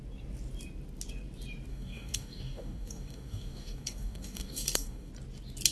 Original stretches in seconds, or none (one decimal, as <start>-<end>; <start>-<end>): 0.0-1.7; 5.1-5.7